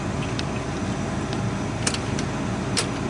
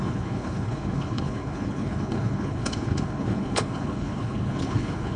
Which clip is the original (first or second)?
first